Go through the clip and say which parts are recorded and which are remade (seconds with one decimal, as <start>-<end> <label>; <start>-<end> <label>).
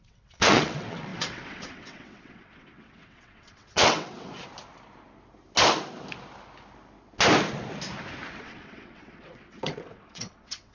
0.0-4.3 remade; 4.3-8.4 recorded; 8.4-10.7 remade